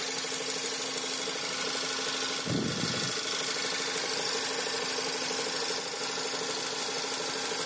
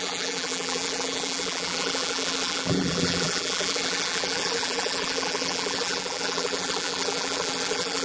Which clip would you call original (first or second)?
first